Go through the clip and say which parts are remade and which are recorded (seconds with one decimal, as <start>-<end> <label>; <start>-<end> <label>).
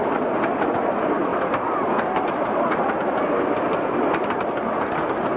0.0-5.4 recorded